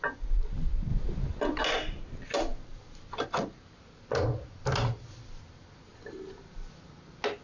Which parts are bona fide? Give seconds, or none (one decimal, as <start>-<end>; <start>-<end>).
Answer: 0.0-7.4